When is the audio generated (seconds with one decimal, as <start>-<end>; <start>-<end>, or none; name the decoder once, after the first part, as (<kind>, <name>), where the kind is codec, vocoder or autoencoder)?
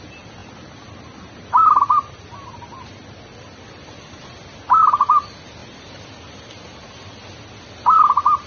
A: none